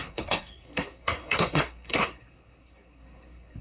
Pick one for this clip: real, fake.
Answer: fake